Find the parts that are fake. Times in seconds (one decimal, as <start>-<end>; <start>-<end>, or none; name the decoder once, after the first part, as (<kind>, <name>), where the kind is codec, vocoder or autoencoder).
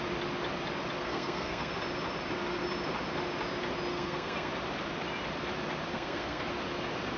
1.0-1.7 (codec, SNAC); 3.9-4.5; 5.9-6.5